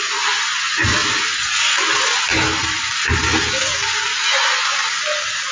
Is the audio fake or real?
real